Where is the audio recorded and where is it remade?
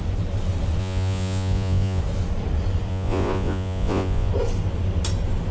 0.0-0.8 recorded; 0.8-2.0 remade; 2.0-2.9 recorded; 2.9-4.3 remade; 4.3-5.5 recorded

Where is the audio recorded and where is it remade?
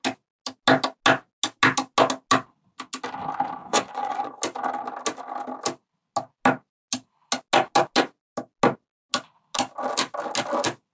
0.0-3.6 recorded; 3.6-4.4 remade; 4.4-10.9 recorded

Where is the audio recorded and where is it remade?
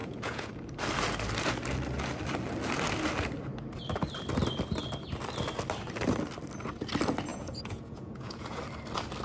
0.0-0.5 remade; 0.5-7.3 recorded; 7.3-8.6 remade; 8.6-9.2 recorded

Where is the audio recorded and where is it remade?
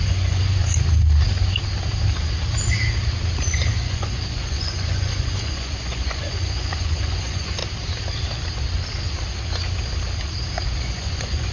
0.0-0.6 remade; 0.6-3.8 recorded; 3.8-7.6 remade; 7.6-10.8 recorded; 10.8-11.5 remade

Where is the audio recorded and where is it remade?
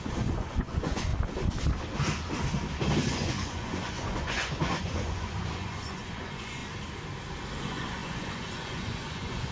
0.0-1.1 remade; 1.1-3.1 recorded; 3.1-6.6 remade; 6.6-7.6 recorded; 7.6-9.5 remade